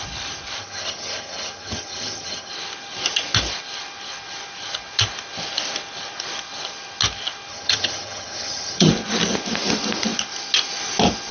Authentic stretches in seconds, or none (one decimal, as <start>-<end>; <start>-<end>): 0.0-0.6; 2.5-7.5; 8.9-11.3